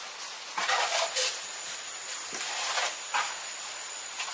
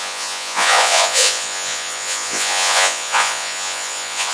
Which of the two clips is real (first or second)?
first